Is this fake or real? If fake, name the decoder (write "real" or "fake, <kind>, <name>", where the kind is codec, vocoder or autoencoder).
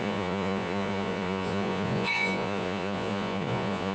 fake, vocoder, Vocos